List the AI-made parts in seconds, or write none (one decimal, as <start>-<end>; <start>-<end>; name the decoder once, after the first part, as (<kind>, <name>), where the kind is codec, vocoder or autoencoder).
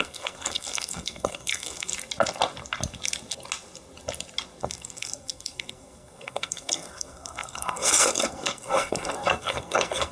0.0-1.9 (codec, SNAC); 4.6-10.1